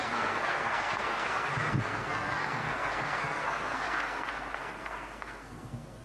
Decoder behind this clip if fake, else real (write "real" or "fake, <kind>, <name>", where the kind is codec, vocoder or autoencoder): fake, codec, SNAC